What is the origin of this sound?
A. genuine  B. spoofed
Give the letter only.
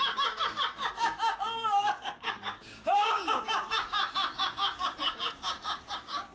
B